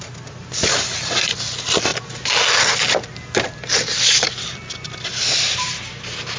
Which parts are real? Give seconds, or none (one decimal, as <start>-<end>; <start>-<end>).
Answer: 0.0-6.4